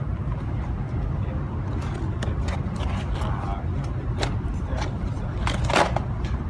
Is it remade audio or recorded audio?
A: recorded